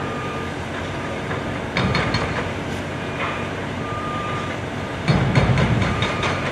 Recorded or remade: remade